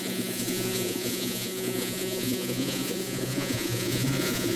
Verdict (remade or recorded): remade